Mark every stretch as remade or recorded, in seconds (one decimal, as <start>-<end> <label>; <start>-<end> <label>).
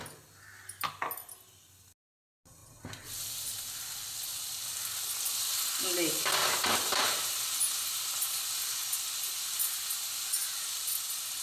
0.0-6.4 recorded; 6.4-7.3 remade; 7.3-11.4 recorded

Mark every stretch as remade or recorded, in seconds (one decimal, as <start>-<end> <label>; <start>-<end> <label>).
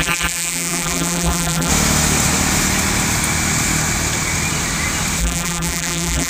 0.0-1.7 remade; 1.7-5.2 recorded; 5.2-6.3 remade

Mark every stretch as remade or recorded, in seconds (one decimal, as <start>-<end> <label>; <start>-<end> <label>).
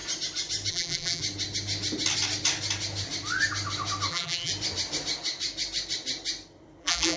0.0-0.7 recorded; 0.7-1.2 remade; 1.2-4.1 recorded; 4.1-4.5 remade; 4.5-6.8 recorded; 6.8-7.2 remade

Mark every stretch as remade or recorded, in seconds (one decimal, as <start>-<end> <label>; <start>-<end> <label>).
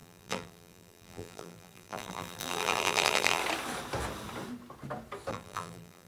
0.0-3.4 remade; 3.4-5.3 recorded; 5.3-6.1 remade